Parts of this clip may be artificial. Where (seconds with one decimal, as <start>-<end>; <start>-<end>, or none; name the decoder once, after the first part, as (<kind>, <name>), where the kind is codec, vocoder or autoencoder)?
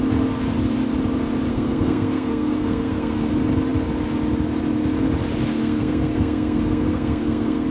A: 1.5-3.3 (codec, SNAC); 5.6-7.7